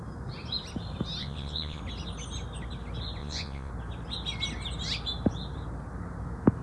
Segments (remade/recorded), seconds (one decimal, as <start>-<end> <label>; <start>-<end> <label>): 0.0-1.2 recorded; 1.2-1.8 remade; 1.8-3.2 recorded; 3.2-3.7 remade; 3.7-6.6 recorded